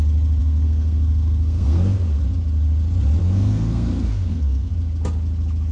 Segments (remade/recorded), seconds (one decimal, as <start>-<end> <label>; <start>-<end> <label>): 0.0-0.4 recorded; 0.4-2.2 remade; 2.2-3.2 recorded; 3.2-4.7 remade; 4.7-5.7 recorded